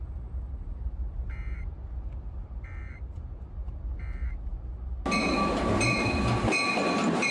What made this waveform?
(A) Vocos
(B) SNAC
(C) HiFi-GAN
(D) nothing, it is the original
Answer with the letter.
D